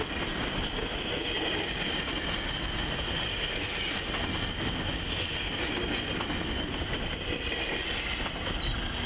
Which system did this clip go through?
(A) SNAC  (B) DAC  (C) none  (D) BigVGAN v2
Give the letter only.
C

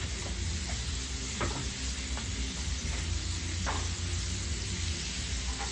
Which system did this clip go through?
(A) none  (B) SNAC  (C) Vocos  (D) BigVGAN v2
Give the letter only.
A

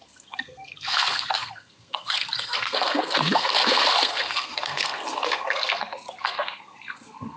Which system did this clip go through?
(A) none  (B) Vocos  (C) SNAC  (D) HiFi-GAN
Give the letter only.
C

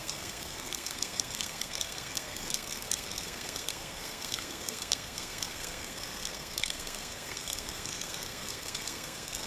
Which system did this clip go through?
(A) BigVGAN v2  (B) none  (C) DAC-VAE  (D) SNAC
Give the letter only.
D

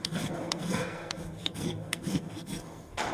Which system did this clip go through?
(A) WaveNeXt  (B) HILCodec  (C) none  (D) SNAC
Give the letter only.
D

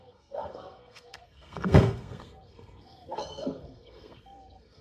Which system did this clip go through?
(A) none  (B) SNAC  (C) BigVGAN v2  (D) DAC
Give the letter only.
B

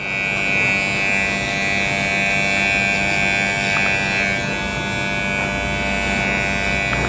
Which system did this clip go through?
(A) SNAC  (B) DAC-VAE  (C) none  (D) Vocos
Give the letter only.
C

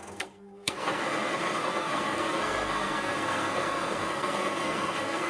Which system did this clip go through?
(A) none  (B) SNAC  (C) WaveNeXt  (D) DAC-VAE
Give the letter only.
B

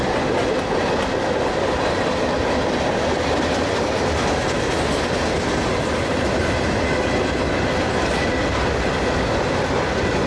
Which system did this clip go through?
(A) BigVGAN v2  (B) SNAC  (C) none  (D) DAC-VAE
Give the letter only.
C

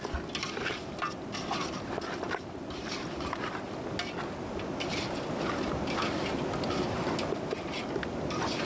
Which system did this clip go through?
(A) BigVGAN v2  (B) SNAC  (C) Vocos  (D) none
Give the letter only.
D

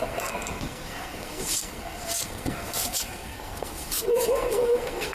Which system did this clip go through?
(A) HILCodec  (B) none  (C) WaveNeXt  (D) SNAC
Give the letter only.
D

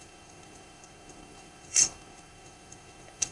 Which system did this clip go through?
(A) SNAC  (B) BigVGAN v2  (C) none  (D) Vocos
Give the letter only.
A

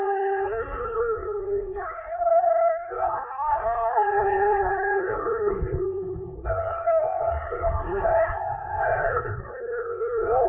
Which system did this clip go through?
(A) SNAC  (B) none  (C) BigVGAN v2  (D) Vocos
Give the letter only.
A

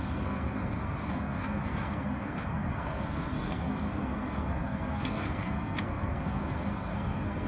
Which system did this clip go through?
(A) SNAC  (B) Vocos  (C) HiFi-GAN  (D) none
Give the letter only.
A